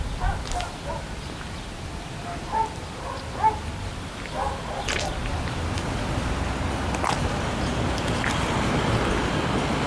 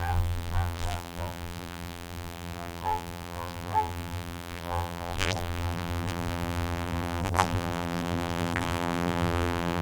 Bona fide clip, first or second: first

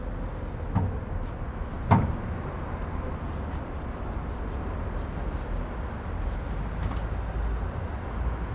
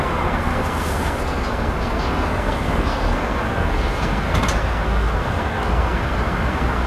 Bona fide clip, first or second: first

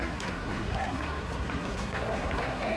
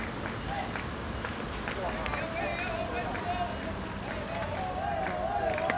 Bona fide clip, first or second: second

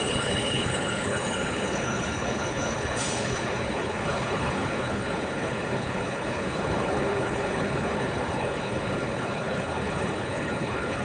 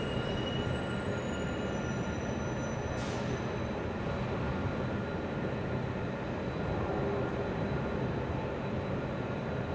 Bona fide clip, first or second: second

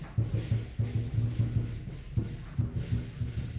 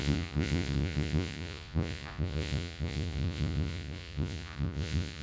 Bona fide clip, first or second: first